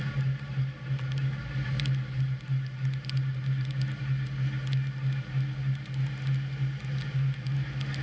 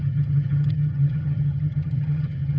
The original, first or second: first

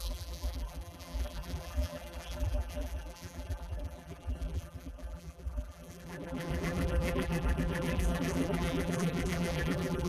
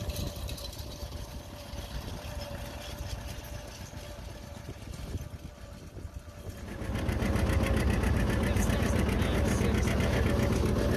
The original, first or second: second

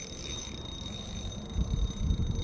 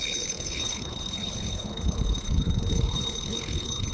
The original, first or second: first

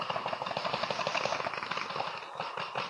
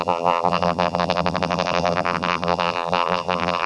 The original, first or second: first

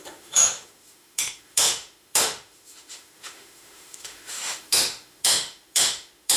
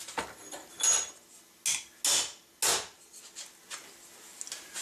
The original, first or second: second